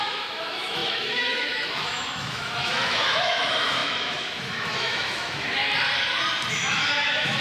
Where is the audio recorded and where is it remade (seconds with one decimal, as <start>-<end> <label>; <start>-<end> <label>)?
0.0-5.6 remade; 5.6-6.5 recorded; 6.5-7.4 remade